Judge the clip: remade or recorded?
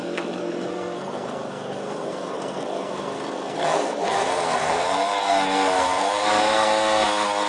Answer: remade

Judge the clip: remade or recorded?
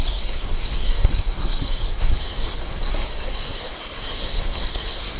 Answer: remade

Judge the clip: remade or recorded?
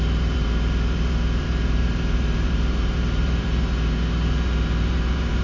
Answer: remade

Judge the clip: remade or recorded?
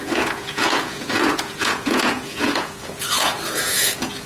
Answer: remade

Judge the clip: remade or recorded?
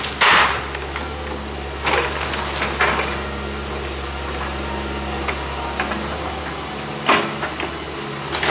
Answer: recorded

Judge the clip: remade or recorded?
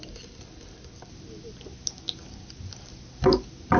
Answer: recorded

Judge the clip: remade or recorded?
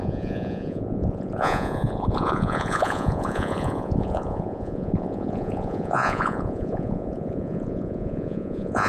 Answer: remade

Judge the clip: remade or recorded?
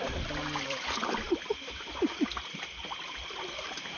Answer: remade